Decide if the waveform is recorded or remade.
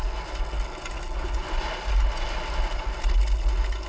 recorded